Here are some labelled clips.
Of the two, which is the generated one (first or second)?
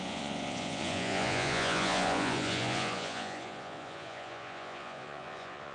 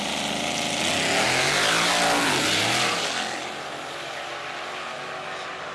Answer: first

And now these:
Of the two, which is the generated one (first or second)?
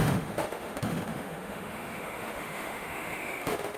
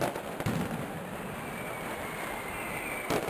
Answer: first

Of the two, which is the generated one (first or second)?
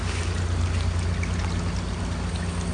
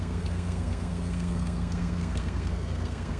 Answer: second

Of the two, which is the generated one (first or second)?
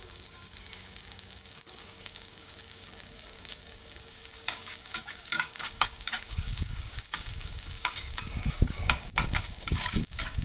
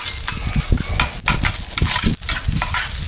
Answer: first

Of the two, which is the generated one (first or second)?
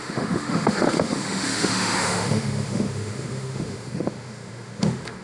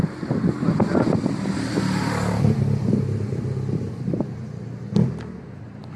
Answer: first